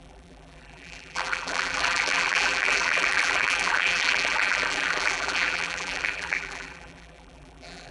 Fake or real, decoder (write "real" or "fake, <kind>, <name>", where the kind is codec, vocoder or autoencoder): fake, vocoder, BigVGAN v2